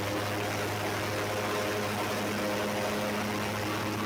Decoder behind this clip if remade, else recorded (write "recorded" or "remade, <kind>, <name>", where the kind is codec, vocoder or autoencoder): recorded